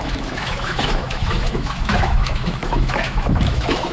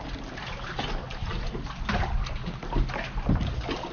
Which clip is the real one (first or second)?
second